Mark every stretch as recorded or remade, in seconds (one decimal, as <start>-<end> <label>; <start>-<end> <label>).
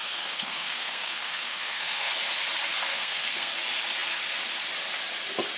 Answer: 0.0-2.1 remade; 2.1-2.9 recorded; 2.9-3.5 remade; 3.5-5.6 recorded